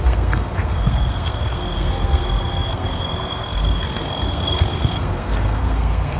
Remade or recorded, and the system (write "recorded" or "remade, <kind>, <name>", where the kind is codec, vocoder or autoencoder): remade, codec, SNAC